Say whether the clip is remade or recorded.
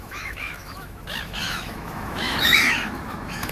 remade